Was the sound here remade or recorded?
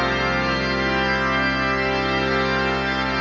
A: recorded